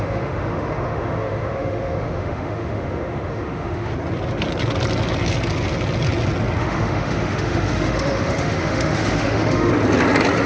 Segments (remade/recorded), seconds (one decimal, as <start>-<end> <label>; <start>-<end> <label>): 0.0-3.9 remade; 3.9-6.6 recorded; 6.6-9.7 remade; 9.7-10.5 recorded